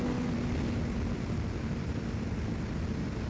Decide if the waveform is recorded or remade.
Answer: recorded